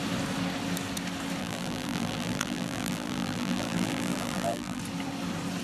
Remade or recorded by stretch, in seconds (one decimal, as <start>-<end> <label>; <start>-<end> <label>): 0.0-1.4 recorded; 1.4-4.8 remade; 4.8-5.6 recorded